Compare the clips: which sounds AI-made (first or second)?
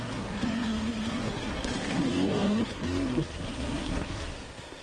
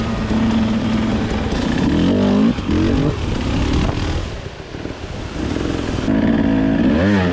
first